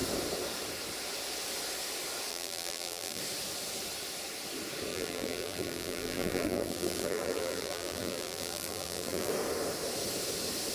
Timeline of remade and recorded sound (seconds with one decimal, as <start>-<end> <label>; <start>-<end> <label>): 0.0-2.3 recorded; 2.3-3.2 remade; 3.2-4.9 recorded; 4.9-9.3 remade; 9.3-10.7 recorded